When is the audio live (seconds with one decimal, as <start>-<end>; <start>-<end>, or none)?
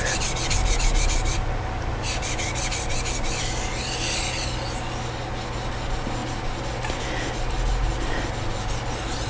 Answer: 0.0-9.3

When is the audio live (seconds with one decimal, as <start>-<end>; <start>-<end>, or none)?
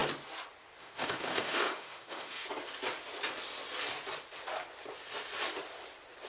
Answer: 0.0-0.8; 2.4-6.3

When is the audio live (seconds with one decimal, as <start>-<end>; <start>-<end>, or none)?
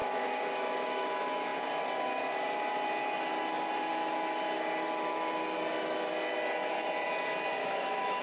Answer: 1.1-7.6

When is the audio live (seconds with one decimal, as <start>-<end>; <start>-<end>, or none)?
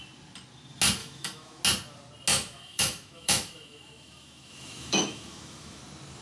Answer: 0.0-1.0; 1.6-2.3; 5.8-6.2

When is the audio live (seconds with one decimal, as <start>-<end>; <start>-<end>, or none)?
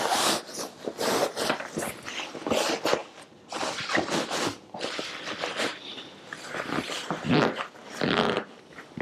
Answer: 0.0-9.0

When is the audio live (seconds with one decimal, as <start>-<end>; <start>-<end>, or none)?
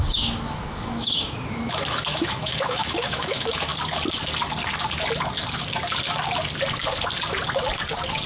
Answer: 3.7-8.3